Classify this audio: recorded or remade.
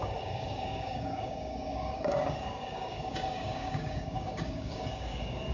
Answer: remade